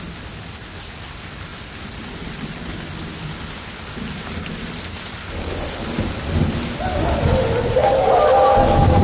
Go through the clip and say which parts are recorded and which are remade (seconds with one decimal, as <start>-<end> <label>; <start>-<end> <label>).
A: 0.0-9.0 recorded